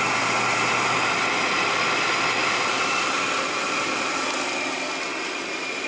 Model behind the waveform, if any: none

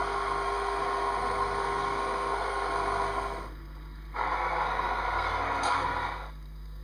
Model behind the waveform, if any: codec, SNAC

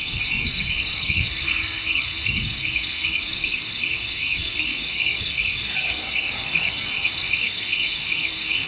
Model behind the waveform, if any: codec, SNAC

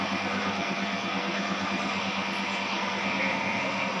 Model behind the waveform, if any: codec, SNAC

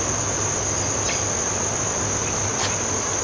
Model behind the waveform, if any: none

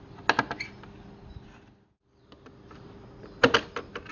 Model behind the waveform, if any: none